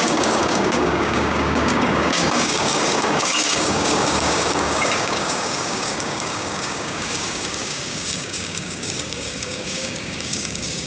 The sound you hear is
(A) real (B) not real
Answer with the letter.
B